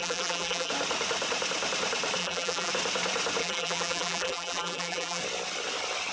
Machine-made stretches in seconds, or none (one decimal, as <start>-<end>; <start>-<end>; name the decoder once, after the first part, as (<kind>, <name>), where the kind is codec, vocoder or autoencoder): 0.0-0.7 (vocoder, BigVGAN v2); 2.2-2.7; 3.4-5.2